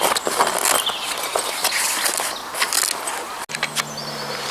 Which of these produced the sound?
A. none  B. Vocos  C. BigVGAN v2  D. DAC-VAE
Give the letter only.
A